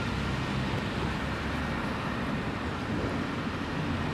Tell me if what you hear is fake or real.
real